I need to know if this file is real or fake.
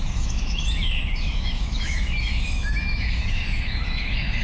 fake